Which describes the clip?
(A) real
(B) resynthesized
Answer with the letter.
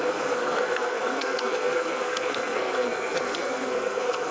B